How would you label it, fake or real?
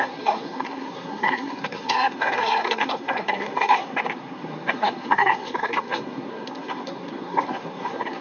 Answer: fake